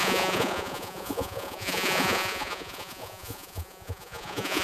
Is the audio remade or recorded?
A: remade